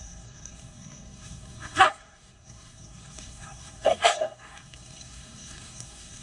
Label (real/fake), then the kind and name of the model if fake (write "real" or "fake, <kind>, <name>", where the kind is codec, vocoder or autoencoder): fake, codec, SNAC